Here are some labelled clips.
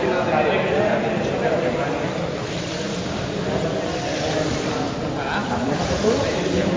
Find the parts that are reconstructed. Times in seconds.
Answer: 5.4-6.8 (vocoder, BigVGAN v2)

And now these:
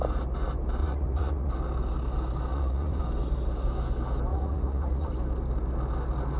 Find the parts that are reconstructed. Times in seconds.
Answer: 0.8-1.5 (vocoder, Vocos); 2.5-3.0; 4.3-5.1

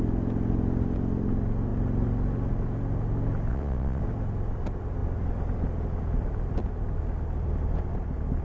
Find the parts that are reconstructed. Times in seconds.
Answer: 3.5-4.0 (vocoder, WaveNeXt)